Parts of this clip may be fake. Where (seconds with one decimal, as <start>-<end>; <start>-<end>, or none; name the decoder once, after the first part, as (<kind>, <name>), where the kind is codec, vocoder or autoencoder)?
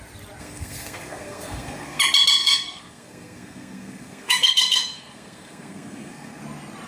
0.4-2.0 (codec, SNAC); 2.4-6.4